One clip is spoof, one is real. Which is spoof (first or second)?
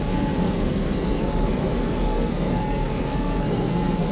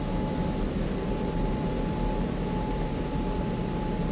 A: first